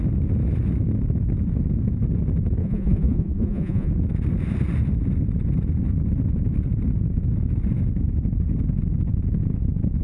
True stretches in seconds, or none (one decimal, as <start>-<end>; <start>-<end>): 0.0-2.6; 3.9-10.0